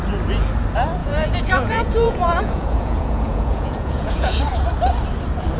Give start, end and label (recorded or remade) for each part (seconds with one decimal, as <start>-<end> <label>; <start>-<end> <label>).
0.0-1.0 recorded; 1.0-4.4 remade; 4.4-5.6 recorded